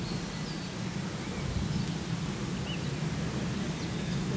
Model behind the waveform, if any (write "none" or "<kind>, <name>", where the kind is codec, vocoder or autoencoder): none